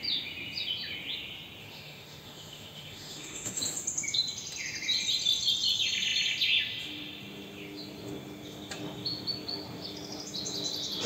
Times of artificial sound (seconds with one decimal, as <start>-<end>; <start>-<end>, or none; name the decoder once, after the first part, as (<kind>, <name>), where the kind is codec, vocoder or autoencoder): 1.6-3.6 (autoencoder, DAC-VAE)